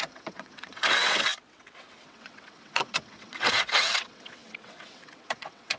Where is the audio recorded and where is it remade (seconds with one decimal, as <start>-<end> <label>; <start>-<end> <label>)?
0.0-5.8 remade